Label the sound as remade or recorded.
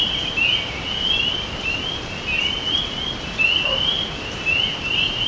recorded